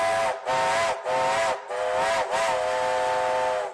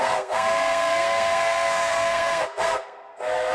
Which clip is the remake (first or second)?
second